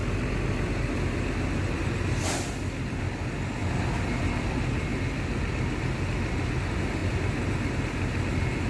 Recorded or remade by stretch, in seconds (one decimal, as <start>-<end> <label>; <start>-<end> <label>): 0.0-3.6 recorded; 3.6-4.3 remade; 4.3-8.7 recorded